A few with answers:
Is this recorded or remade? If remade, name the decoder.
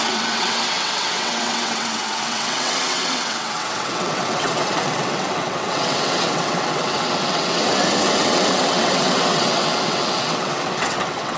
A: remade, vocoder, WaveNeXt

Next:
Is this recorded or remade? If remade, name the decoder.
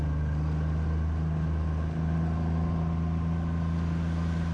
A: recorded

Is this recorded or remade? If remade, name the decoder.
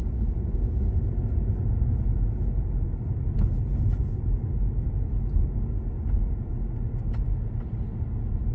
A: recorded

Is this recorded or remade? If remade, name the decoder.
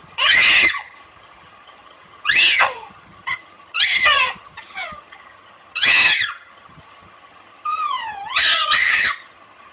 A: remade, vocoder, HiFi-GAN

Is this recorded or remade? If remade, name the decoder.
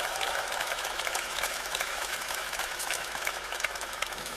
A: remade, autoencoder, DAC-VAE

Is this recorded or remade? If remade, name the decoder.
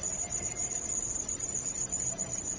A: remade, vocoder, BigVGAN v2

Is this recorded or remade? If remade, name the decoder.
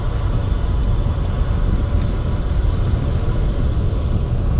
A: recorded